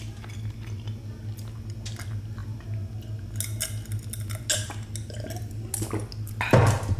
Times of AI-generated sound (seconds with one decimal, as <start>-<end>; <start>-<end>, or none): none